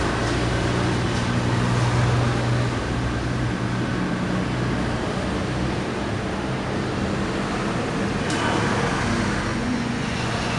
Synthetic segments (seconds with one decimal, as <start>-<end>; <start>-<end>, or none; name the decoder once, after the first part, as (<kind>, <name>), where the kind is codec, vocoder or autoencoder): 9.5-10.6 (vocoder, Vocos)